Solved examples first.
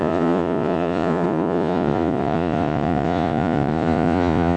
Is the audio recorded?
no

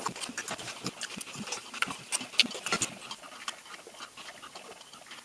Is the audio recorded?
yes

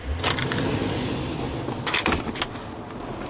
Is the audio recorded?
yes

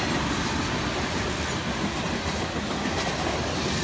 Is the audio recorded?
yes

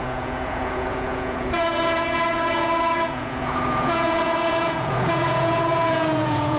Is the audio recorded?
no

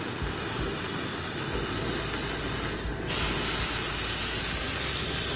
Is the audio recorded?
yes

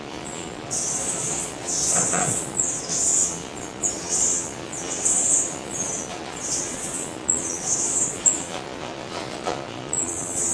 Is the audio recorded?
no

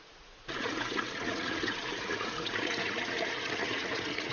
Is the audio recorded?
no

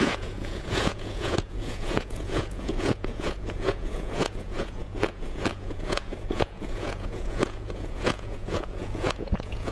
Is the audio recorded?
no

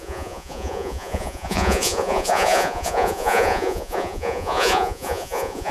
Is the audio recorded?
no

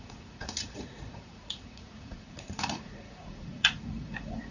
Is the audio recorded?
no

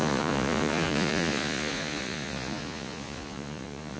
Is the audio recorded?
no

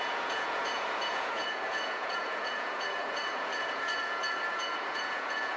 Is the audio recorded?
no